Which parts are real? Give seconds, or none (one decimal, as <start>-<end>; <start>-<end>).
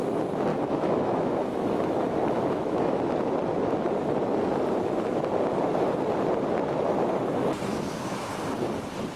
0.0-0.5; 3.0-7.7; 8.3-9.2